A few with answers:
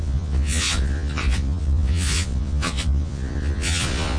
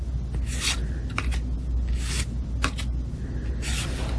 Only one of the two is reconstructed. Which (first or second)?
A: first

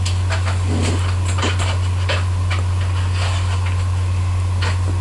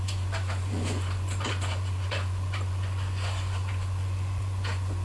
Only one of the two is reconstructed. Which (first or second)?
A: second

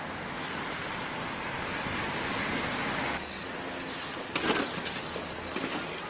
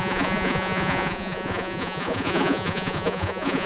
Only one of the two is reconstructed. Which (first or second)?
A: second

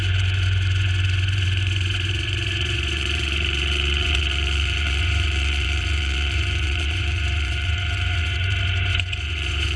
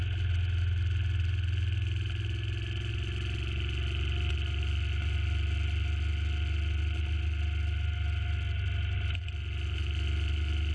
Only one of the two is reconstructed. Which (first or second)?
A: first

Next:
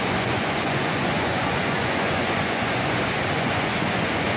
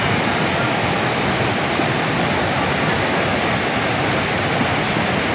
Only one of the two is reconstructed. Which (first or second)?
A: first